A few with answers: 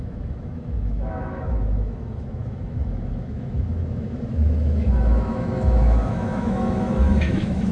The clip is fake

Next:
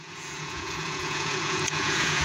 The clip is fake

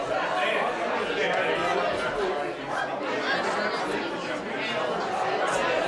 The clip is real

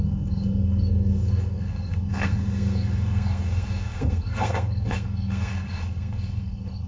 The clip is fake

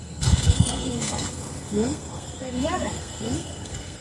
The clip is fake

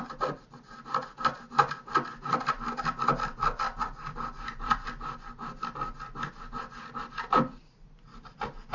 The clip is real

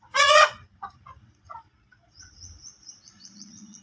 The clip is fake